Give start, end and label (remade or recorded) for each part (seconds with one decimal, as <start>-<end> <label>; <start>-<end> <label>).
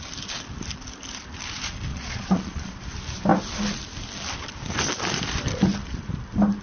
0.0-1.9 recorded; 1.9-2.7 remade; 2.7-6.6 recorded